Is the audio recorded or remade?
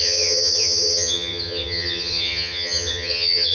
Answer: remade